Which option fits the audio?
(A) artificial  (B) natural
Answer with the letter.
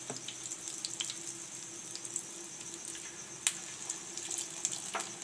B